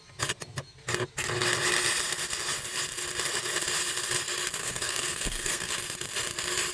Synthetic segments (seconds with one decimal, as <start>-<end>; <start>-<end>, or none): 4.6-5.7